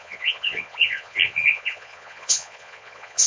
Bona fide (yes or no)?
no